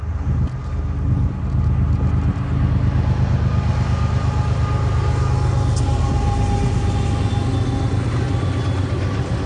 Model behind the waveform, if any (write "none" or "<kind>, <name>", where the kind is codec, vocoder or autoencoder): none